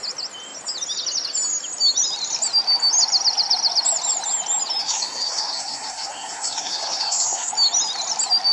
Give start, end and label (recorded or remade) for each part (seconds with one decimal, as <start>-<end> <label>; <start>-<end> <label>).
0.0-4.8 recorded; 4.8-7.5 remade; 7.5-8.5 recorded